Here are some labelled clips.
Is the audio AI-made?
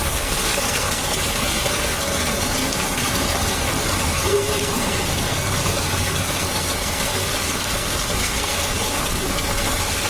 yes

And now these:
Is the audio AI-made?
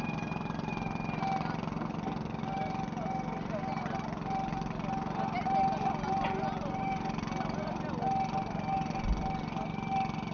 no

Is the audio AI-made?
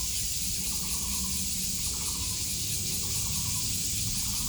no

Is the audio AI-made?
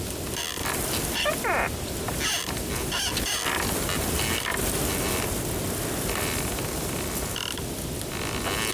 no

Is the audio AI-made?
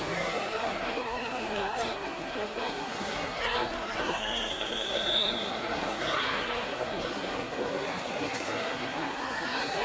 yes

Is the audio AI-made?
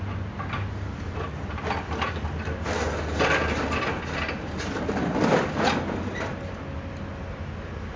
no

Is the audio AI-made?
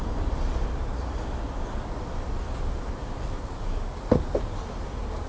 no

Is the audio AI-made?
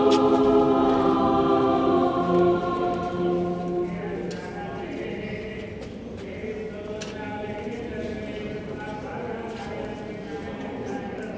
no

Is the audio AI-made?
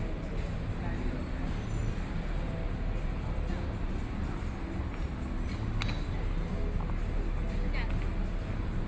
no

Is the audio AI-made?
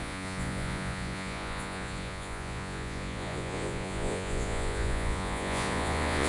yes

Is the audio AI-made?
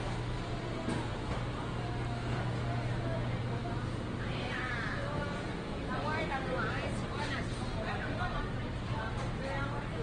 no